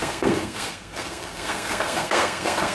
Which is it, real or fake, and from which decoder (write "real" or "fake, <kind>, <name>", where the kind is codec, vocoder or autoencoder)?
fake, codec, SNAC